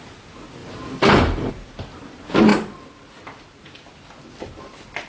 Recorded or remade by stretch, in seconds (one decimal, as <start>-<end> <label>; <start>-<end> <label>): 0.0-0.6 recorded; 0.6-1.5 remade; 1.5-5.1 recorded